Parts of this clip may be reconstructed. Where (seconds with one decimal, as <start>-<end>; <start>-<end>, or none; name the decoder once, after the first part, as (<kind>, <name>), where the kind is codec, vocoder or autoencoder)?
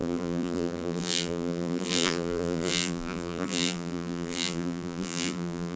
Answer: 0.0-5.8 (vocoder, BigVGAN v2)